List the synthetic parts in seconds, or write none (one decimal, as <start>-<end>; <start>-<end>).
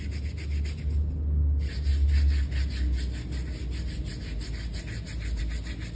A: none